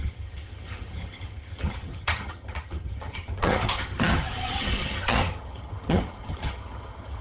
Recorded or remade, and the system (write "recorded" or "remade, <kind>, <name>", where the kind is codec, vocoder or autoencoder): remade, vocoder, HiFi-GAN